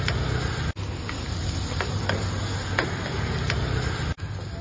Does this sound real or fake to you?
real